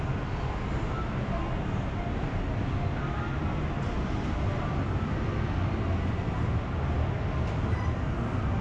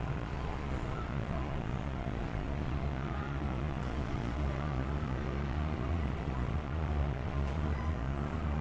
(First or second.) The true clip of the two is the first